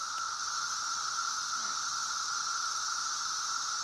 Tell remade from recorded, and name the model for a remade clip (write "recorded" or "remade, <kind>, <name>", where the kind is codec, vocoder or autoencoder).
recorded